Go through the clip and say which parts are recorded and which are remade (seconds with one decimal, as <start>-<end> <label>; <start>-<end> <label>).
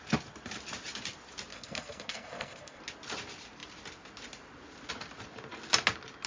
0.0-1.5 recorded; 1.5-2.8 remade; 2.8-6.3 recorded